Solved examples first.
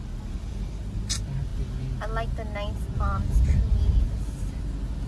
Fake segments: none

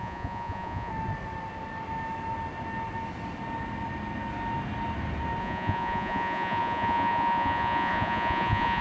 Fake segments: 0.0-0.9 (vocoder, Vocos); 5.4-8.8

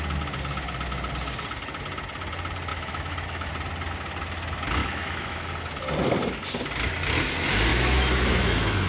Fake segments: 2.7-3.5 (autoencoder, DAC-VAE); 4.8-5.5; 7.7-8.9

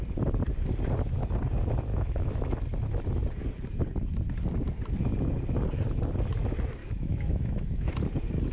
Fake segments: 1.9-2.6 (autoencoder, DAC-VAE); 6.8-7.9